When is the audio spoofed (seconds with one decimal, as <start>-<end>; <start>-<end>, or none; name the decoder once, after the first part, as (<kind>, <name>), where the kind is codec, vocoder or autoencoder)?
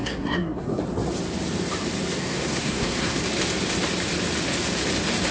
0.0-0.8 (codec, SNAC); 2.2-3.2